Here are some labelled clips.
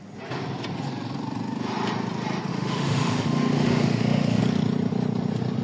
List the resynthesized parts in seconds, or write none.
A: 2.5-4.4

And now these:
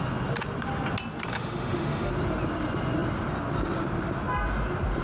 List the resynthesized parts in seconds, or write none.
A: 1.3-2.1

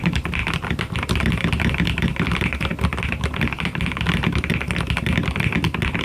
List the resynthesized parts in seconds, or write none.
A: none